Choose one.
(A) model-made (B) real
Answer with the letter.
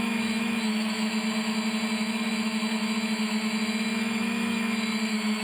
A